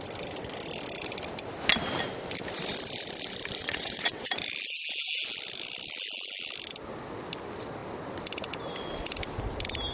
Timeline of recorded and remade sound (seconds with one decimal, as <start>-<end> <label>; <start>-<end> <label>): 0.0-3.6 recorded; 3.6-4.3 remade; 4.3-9.9 recorded